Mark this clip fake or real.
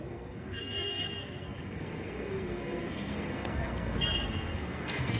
fake